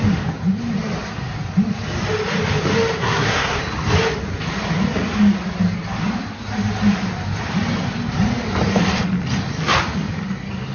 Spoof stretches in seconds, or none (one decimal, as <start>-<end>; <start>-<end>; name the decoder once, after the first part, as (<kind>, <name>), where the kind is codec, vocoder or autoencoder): 3.0-3.6 (codec, SNAC)